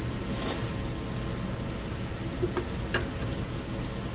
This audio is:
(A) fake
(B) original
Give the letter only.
B